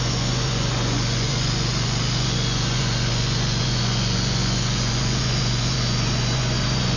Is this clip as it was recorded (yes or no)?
no